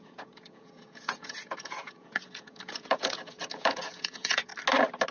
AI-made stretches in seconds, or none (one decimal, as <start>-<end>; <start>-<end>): 0.0-4.5